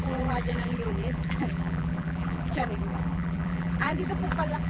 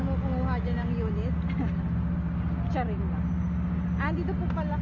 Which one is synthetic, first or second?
first